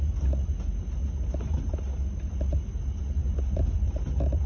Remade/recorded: recorded